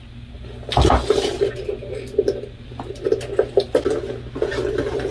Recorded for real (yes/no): yes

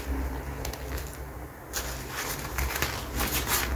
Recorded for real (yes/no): yes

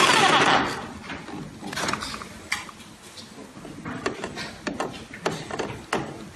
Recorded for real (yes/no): yes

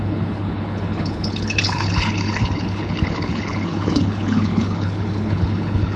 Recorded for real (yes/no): no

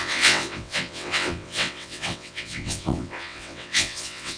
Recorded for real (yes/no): no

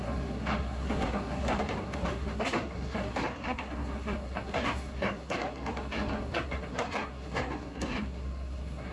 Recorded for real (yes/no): no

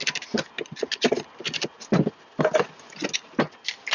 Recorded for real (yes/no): yes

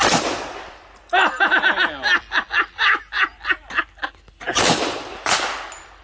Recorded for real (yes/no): yes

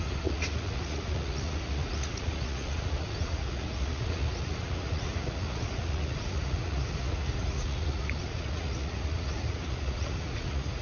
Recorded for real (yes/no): no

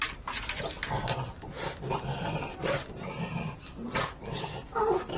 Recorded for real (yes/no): yes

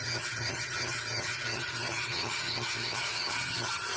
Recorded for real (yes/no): no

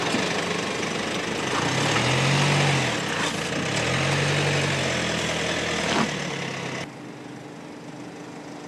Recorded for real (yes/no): yes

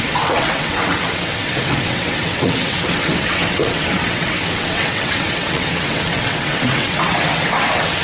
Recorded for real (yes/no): no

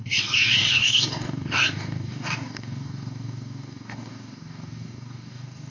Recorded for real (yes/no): no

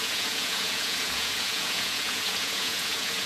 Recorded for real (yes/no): no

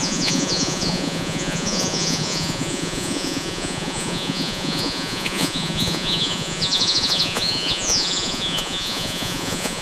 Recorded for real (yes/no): no